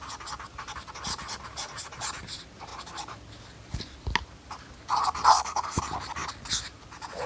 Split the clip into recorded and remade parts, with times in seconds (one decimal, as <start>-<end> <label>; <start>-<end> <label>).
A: 0.0-5.3 recorded; 5.3-5.8 remade; 5.8-7.3 recorded